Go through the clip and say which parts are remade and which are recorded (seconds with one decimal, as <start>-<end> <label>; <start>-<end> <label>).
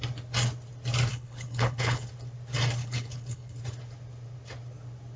0.0-1.1 recorded; 1.1-2.1 remade; 2.1-2.8 recorded; 2.8-3.6 remade; 3.6-5.2 recorded